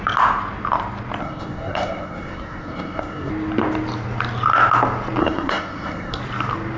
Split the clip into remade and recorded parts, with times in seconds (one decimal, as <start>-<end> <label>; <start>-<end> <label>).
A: 0.0-1.2 recorded; 1.2-3.3 remade; 3.3-5.2 recorded; 5.2-6.2 remade; 6.2-6.8 recorded